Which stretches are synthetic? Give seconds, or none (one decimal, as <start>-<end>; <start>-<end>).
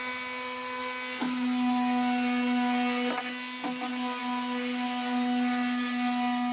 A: none